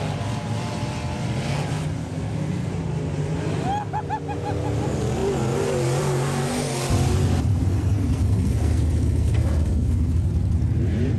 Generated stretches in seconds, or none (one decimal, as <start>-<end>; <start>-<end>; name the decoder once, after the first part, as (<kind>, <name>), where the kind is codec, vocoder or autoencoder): 2.0-2.7 (codec, SNAC); 7.5-10.2

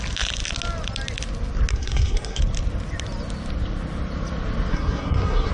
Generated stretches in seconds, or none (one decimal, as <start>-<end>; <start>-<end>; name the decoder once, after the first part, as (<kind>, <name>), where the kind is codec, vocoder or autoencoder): 1.7-2.4 (codec, SNAC); 4.7-5.5

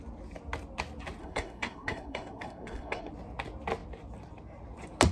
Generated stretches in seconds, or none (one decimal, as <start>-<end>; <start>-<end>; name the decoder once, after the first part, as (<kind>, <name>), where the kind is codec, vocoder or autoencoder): 1.2-3.1 (codec, SNAC)

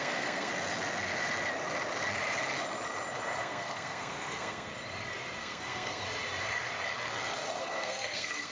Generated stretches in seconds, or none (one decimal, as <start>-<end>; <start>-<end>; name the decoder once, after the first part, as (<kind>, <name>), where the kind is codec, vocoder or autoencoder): 0.0-0.5 (codec, SNAC); 3.4-4.7; 5.4-6.0; 7.6-8.5

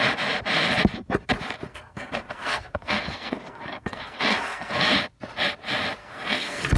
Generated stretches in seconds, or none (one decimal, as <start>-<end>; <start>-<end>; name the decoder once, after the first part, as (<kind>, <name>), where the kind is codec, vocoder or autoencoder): 1.7-4.9 (codec, SNAC); 6.0-6.8

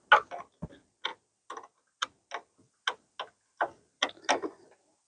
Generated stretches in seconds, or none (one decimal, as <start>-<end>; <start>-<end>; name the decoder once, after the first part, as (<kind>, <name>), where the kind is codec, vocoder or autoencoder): none